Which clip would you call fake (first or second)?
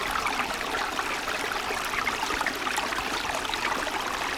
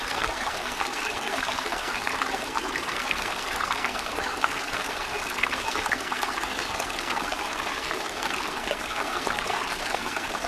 second